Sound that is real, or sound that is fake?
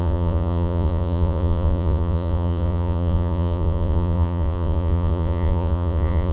fake